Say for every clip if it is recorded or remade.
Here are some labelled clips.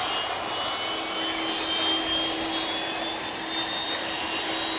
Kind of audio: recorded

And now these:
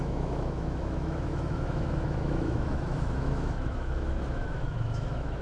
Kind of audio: remade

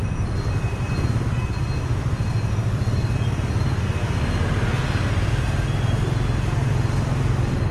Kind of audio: recorded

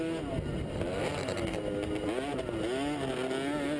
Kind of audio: recorded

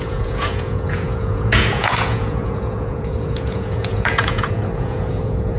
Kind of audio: remade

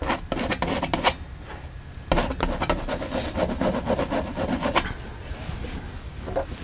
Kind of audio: recorded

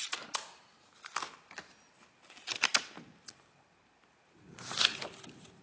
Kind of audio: recorded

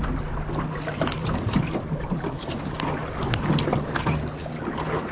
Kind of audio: recorded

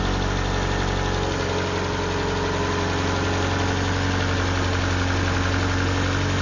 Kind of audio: recorded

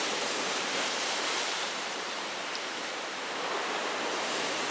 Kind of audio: remade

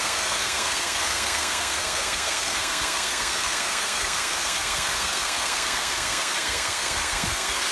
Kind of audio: remade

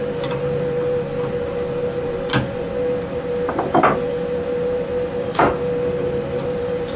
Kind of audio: recorded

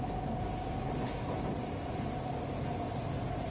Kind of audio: recorded